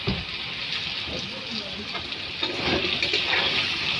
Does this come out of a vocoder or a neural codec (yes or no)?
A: no